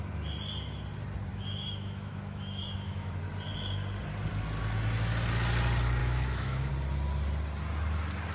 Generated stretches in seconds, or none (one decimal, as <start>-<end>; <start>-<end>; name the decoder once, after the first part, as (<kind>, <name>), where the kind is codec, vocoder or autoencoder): 1.3-3.2 (autoencoder, DAC-VAE); 6.0-6.7